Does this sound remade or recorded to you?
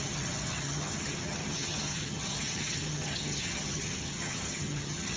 remade